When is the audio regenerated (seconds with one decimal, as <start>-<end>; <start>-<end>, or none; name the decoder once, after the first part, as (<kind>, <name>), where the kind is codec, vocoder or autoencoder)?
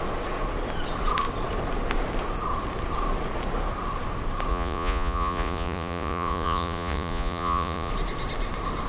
4.5-7.9 (vocoder, Vocos)